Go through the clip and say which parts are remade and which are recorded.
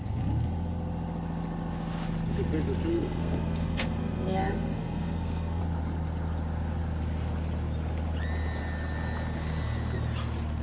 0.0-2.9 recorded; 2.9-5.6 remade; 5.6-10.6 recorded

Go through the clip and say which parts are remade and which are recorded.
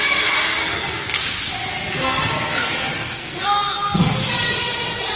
0.0-0.6 recorded; 0.6-1.4 remade; 1.4-2.0 recorded; 2.0-2.7 remade; 2.7-3.1 recorded; 3.1-4.3 remade; 4.3-5.2 recorded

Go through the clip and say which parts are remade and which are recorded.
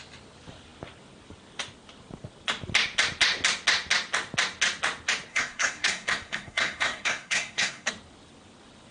0.0-5.3 recorded; 5.3-7.9 remade; 7.9-8.9 recorded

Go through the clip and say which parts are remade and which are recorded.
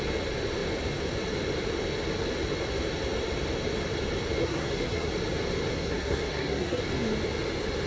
0.0-4.4 recorded; 4.4-5.1 remade; 5.1-5.7 recorded; 5.7-6.8 remade; 6.8-7.9 recorded